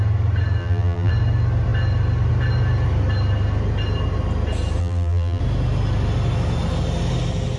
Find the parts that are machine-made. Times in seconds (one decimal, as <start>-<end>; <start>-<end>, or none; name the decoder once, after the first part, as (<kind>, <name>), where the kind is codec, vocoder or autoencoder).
0.6-1.1 (vocoder, BigVGAN v2); 4.8-5.4

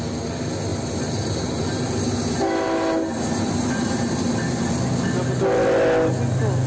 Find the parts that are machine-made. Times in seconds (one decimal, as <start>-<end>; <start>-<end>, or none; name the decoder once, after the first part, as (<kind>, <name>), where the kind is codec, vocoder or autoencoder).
0.7-4.7 (vocoder, BigVGAN v2)

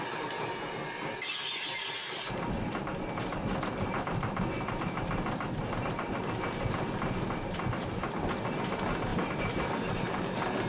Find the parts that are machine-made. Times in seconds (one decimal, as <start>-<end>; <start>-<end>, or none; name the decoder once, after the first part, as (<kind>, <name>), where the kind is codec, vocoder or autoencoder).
2.0-2.8 (vocoder, BigVGAN v2); 9.1-9.9